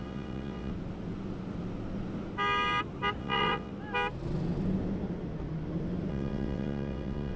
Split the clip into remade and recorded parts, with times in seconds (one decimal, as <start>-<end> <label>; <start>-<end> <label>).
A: 0.0-0.7 remade; 0.7-3.2 recorded; 3.2-3.7 remade; 3.7-6.1 recorded; 6.1-7.4 remade